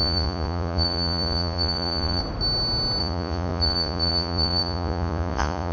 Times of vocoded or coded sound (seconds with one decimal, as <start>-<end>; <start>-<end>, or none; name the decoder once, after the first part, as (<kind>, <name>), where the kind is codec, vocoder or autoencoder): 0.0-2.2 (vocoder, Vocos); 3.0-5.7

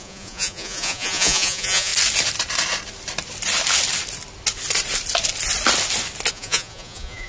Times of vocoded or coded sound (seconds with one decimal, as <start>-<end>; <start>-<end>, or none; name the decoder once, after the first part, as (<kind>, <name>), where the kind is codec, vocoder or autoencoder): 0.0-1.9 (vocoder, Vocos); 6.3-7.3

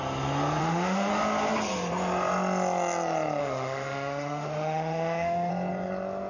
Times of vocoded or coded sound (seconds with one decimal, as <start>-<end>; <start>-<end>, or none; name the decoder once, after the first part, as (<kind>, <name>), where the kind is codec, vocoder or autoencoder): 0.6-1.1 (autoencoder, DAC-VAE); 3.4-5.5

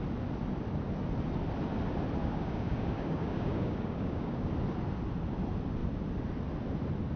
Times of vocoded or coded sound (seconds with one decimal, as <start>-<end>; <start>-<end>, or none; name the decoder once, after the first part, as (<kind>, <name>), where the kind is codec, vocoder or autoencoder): 2.2-4.5 (codec, DAC)

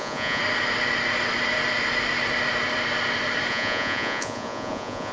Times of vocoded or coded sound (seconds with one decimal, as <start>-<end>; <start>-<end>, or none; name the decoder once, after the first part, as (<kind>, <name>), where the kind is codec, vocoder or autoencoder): 0.0-0.4 (vocoder, Vocos); 3.5-5.1

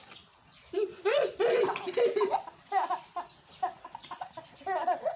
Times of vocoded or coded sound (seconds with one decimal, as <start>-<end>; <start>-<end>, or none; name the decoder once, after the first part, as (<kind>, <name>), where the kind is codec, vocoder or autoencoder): 0.9-1.6 (vocoder, Vocos)

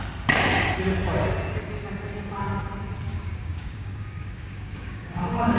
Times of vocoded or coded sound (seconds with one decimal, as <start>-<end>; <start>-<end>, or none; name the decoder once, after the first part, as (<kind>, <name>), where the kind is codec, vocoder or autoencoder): 3.1-5.6 (codec, DAC)

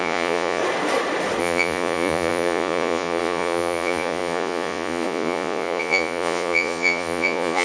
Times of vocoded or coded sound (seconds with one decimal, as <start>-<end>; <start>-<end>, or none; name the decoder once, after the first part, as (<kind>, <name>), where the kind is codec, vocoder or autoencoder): 0.0-0.6 (vocoder, Vocos); 1.4-7.6